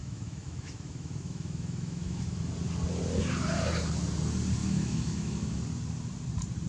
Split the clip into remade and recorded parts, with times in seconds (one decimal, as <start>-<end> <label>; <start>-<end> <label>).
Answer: 0.0-2.4 remade; 2.4-4.6 recorded; 4.6-5.6 remade; 5.6-6.7 recorded